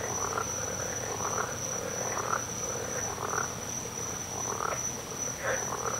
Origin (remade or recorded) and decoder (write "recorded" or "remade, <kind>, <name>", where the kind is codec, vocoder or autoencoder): recorded